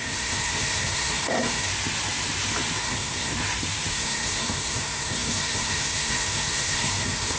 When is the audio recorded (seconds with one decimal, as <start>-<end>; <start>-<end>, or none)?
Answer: 1.7-2.8; 3.3-3.9